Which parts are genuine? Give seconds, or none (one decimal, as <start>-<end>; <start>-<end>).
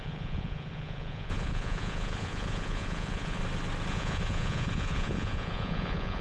3.4-3.9